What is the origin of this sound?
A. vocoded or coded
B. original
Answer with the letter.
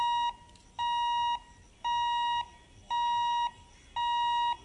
B